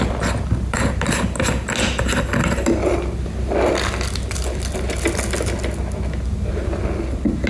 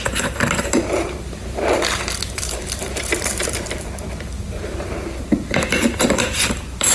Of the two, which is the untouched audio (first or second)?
first